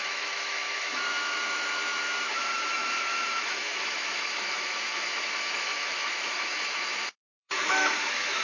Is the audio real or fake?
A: fake